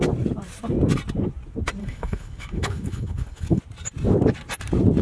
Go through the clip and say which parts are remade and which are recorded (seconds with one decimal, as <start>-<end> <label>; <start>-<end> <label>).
0.0-1.8 recorded; 1.8-3.6 remade; 3.6-5.0 recorded